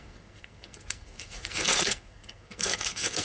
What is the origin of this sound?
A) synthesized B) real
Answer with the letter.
A